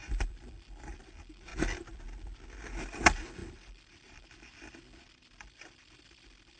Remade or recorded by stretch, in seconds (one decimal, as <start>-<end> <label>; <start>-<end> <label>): 0.0-1.5 remade; 1.5-2.8 recorded; 2.8-6.6 remade